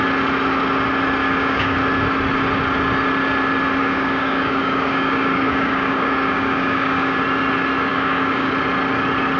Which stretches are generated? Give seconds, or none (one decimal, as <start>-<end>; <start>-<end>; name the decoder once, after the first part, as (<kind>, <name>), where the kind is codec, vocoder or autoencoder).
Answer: 1.2-1.8 (codec, DAC); 3.8-7.2; 7.9-8.5